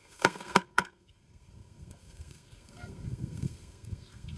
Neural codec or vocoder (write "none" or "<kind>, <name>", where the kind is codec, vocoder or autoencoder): codec, SNAC